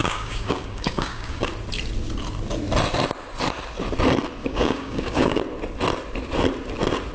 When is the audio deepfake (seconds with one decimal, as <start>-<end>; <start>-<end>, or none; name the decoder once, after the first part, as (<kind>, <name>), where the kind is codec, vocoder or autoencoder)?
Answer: 0.0-1.5 (codec, DAC); 4.4-5.4